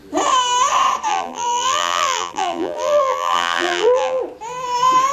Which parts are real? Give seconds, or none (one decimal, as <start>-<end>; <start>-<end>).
0.0-1.1; 4.2-5.1